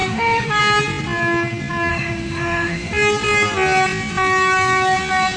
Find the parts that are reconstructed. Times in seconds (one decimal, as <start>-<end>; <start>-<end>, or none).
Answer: 0.0-0.6; 1.9-2.9